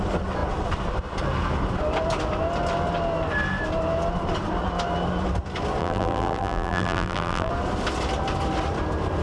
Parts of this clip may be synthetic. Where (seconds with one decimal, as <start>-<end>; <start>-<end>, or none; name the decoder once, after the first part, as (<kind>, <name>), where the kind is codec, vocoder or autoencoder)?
5.8-7.5 (vocoder, BigVGAN v2)